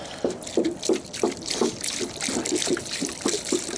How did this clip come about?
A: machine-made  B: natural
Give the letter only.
B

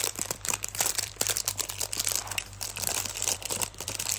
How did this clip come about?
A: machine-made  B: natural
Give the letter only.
A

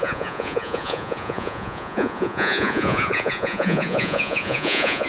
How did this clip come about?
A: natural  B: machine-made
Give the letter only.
B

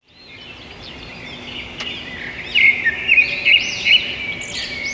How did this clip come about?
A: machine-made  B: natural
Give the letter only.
B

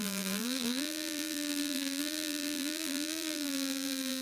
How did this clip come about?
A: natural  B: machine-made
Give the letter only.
B